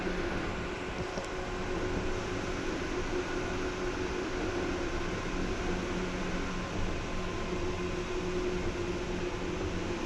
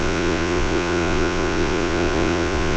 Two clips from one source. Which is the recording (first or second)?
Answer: first